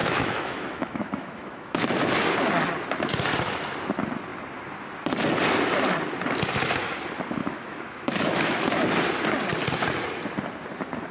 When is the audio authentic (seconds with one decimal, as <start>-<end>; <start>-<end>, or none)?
1.8-7.4; 8.7-11.1